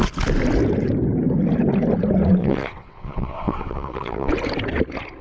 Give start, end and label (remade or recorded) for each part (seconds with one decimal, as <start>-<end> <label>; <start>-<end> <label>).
0.0-2.4 recorded; 2.4-4.3 remade; 4.3-5.2 recorded